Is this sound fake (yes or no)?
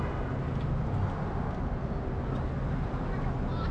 no